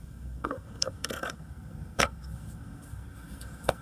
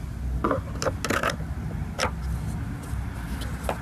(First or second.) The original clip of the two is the second